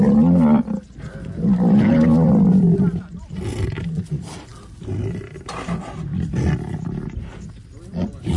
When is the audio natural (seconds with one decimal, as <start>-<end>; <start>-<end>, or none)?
0.0-8.4